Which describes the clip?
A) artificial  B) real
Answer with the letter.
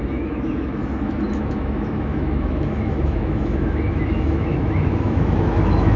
A